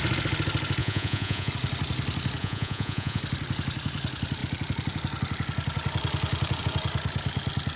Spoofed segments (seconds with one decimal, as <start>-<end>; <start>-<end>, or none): 0.8-1.5; 2.4-3.2